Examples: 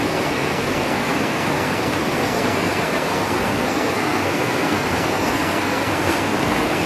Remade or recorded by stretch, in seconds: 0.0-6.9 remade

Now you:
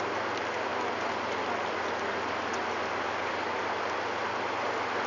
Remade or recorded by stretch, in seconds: 0.0-5.1 recorded

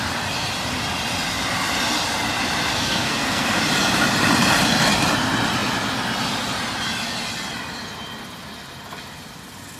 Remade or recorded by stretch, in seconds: 0.0-2.7 recorded; 2.7-3.6 remade; 3.6-9.8 recorded